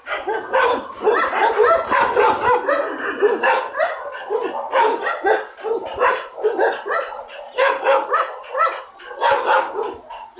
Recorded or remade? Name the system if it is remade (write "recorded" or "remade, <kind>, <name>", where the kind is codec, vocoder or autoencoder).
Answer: recorded